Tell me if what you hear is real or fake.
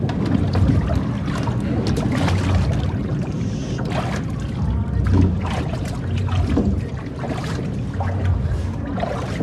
real